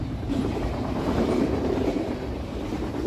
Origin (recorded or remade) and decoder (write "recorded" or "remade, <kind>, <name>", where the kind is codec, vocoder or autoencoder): remade, vocoder, BigVGAN v2